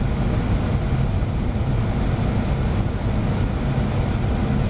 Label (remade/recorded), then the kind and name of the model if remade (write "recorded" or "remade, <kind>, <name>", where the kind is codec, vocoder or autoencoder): recorded